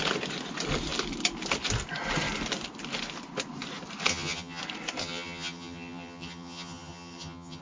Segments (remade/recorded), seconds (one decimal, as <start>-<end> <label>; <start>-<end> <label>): 0.0-4.1 recorded; 4.1-4.6 remade; 4.6-5.0 recorded; 5.0-7.6 remade